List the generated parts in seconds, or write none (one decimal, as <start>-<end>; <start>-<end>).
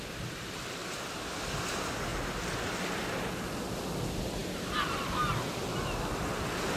0.8-1.6